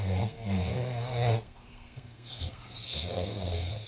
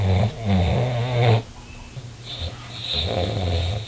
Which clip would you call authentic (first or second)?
second